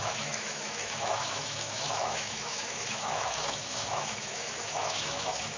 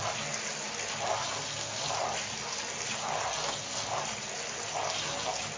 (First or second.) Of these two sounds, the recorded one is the second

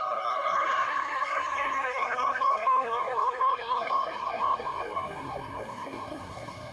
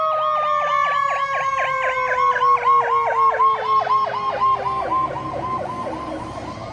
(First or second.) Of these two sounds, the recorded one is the second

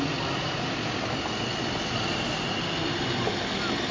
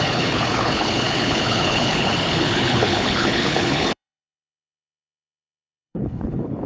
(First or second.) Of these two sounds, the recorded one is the first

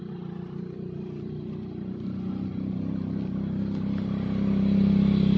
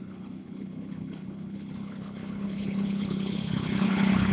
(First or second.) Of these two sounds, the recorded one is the first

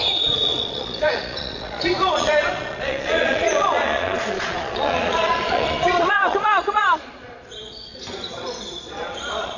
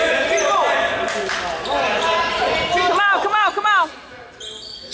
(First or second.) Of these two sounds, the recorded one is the second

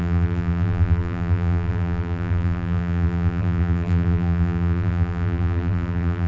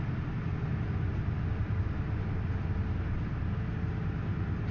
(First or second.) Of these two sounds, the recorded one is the second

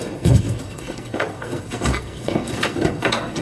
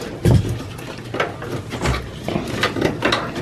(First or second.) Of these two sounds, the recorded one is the second